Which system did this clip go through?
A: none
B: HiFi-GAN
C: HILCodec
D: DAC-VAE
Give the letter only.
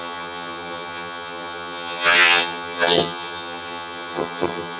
B